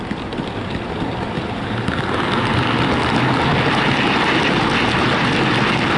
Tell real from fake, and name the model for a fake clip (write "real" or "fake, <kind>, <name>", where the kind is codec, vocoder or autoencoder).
real